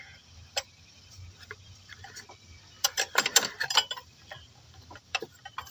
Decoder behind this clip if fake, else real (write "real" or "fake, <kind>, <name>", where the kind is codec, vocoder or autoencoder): fake, vocoder, BigVGAN v2